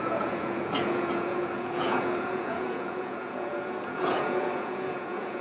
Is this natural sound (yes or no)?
no